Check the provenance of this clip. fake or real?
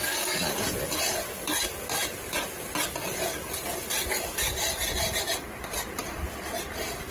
real